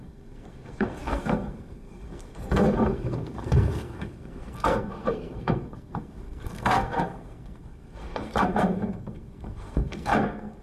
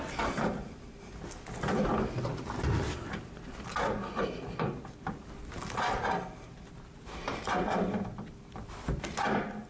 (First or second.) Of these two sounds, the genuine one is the second